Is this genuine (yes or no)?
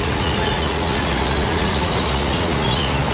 no